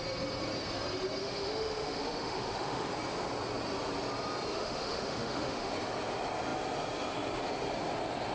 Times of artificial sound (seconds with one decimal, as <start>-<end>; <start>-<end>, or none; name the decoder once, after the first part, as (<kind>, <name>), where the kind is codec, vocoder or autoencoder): 1.2-2.9 (autoencoder, DAC-VAE); 4.5-5.7